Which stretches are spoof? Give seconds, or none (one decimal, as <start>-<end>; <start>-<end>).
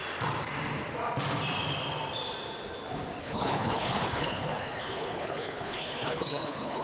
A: 3.2-6.8